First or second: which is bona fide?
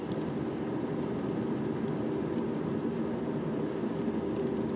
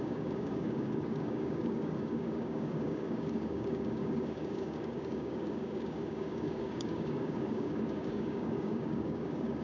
first